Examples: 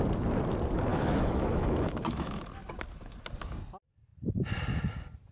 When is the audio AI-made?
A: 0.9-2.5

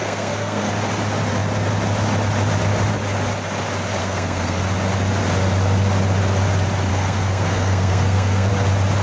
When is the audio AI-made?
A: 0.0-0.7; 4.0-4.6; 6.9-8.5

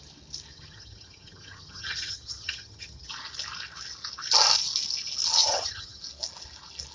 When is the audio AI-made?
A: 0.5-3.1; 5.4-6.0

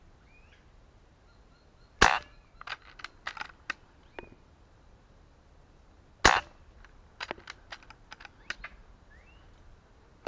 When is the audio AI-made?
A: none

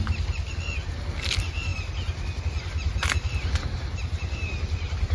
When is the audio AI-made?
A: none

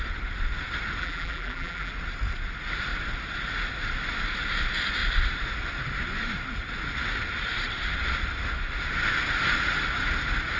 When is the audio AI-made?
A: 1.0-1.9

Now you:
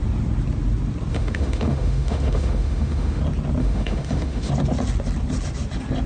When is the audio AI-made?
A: 1.1-3.2; 3.6-4.5

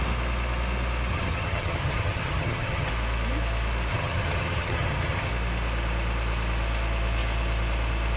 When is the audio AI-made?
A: 1.1-2.9; 3.9-5.3